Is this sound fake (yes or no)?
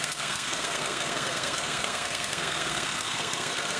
yes